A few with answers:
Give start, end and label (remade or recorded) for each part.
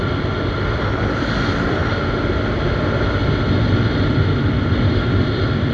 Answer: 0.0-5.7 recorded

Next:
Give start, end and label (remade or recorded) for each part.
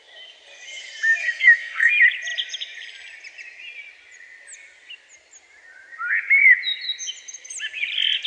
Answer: 0.0-1.2 recorded; 1.2-1.9 remade; 1.9-8.3 recorded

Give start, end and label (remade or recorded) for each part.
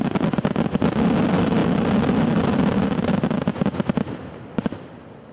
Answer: 0.0-5.3 recorded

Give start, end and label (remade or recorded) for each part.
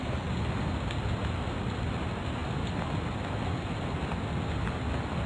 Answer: 0.0-5.3 recorded